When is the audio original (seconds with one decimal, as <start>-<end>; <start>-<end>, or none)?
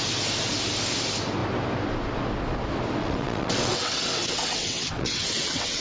0.0-3.0